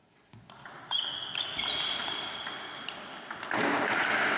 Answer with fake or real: real